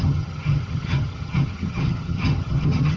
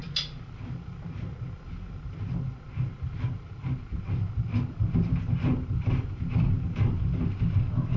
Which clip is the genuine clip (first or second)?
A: second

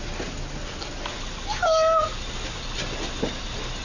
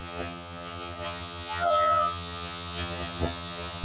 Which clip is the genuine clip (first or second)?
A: first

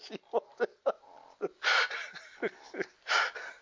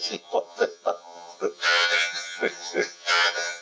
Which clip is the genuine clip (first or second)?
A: first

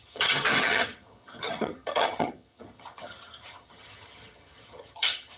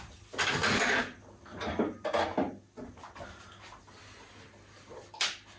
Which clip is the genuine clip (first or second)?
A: second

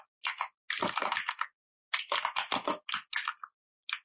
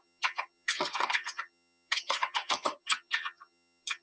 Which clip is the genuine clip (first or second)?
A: first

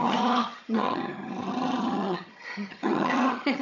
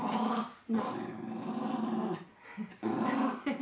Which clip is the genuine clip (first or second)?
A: second